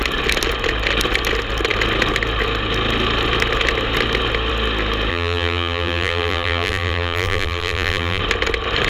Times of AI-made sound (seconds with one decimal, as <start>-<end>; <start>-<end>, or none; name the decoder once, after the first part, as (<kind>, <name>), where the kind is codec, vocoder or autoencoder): 5.1-8.2 (vocoder, BigVGAN v2)